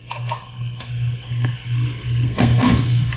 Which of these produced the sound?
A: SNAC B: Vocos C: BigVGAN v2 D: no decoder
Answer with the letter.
A